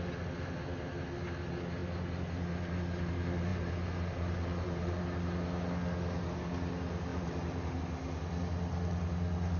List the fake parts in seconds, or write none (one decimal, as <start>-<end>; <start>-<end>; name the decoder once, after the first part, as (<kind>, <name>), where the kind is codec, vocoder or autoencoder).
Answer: 3.5-5.0 (vocoder, BigVGAN v2); 7.1-7.8